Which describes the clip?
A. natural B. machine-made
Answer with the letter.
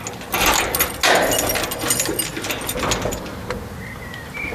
A